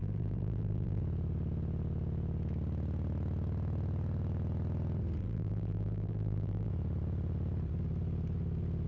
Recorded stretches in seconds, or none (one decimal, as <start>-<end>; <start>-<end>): 1.0-5.2; 6.7-8.9